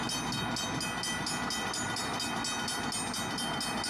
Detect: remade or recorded recorded